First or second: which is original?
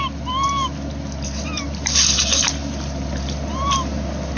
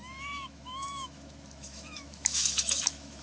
first